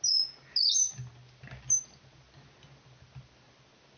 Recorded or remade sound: recorded